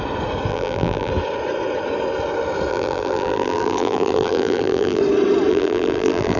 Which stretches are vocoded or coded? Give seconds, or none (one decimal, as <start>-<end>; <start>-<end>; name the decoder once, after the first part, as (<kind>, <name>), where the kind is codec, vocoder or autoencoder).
0.5-1.1 (vocoder, BigVGAN v2); 2.7-5.0; 5.5-6.4